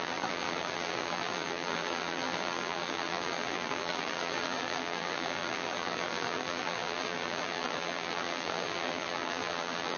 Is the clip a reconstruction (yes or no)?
yes